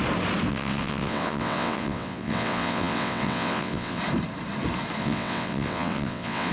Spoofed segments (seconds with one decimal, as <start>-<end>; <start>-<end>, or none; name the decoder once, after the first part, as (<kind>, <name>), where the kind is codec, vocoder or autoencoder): 0.5-4.0 (vocoder, WaveNeXt); 5.0-6.5